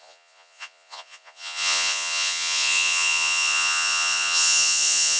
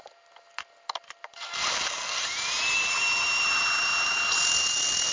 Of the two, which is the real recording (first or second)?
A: second